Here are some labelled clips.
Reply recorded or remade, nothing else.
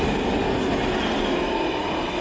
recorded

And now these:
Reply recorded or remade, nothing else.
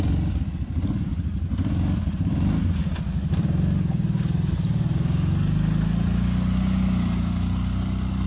recorded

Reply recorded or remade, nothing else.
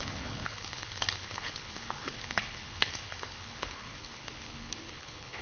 remade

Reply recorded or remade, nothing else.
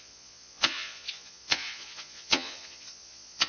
remade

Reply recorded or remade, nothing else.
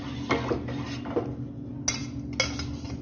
recorded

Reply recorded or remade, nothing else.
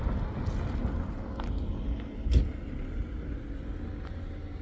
recorded